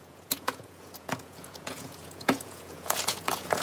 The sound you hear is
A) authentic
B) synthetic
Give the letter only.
B